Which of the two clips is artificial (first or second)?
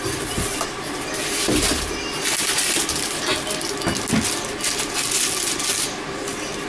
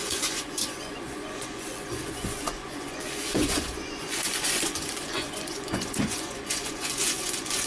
second